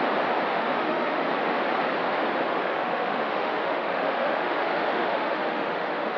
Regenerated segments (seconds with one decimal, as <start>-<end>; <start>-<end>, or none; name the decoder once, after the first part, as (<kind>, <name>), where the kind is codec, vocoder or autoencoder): 0.5-1.2 (autoencoder, DAC-VAE); 2.5-6.2